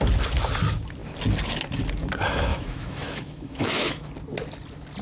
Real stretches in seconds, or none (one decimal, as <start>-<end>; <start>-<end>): 0.0-2.5; 4.1-5.0